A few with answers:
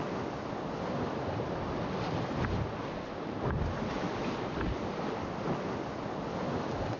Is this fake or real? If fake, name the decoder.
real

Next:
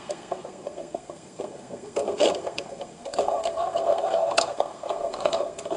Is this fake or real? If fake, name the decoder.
fake, codec, SNAC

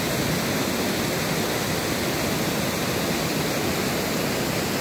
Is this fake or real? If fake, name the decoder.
real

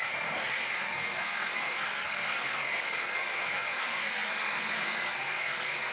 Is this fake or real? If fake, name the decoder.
fake, codec, SNAC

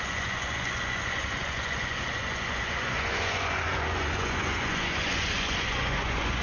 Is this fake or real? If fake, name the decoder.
fake, vocoder, Vocos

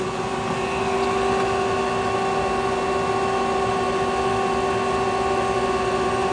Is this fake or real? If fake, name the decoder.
real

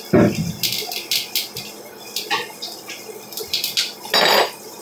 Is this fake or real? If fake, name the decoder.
real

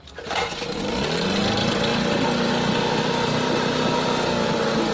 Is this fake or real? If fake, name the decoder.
real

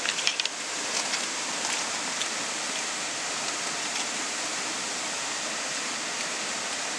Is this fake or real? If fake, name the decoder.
real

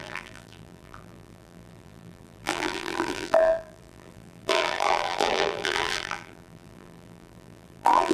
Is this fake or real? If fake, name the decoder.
fake, vocoder, BigVGAN v2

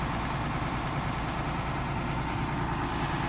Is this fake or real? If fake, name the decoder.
real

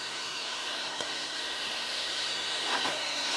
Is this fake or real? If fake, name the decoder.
fake, codec, SNAC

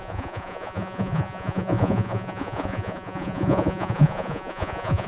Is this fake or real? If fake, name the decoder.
fake, vocoder, Vocos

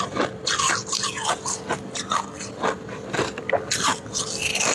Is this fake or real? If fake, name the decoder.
real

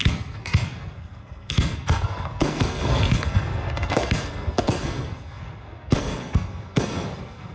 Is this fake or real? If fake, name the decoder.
fake, codec, SNAC